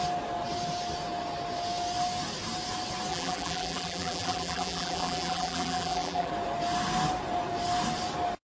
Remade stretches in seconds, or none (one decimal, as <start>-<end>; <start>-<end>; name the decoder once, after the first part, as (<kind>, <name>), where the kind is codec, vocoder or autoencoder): 3.1-6.3 (vocoder, BigVGAN v2)

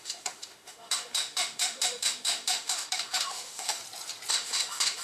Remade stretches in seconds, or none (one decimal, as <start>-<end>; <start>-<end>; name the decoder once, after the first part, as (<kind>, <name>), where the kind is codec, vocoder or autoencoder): 0.0-3.8 (autoencoder, DAC-VAE); 4.3-5.0

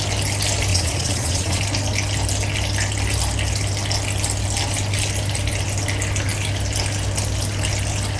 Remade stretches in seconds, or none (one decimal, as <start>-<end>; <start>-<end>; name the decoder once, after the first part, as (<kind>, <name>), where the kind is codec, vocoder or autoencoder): 0.7-1.6 (vocoder, Vocos)

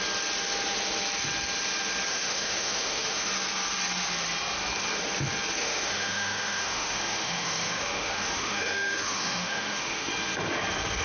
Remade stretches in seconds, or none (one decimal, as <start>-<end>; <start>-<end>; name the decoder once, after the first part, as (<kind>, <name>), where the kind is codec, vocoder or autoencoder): 2.1-3.3 (autoencoder, DAC-VAE); 5.6-10.1